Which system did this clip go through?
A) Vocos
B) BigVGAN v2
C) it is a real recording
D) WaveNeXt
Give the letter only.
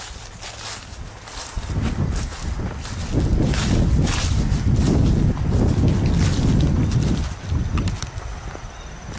C